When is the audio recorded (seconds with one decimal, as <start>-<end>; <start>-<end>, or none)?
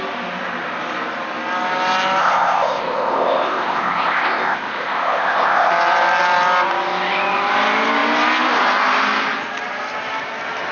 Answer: 0.0-2.2; 5.7-10.7